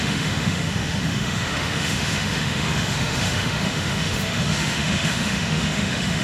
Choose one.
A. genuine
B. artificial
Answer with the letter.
B